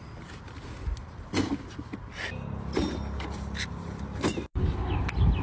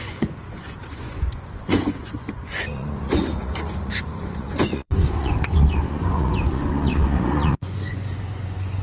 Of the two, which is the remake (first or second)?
second